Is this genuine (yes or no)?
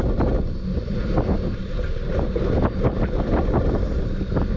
yes